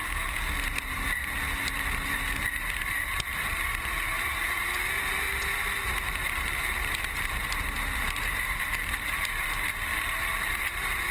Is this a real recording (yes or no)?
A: yes